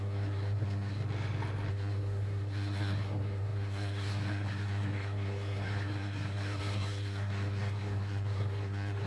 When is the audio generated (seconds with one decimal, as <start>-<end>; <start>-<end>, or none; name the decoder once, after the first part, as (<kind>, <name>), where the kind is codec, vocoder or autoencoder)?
0.0-1.0 (codec, SNAC); 1.7-9.1